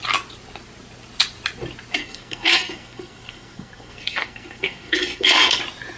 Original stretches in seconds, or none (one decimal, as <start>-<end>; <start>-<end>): 0.0-2.0; 5.6-6.0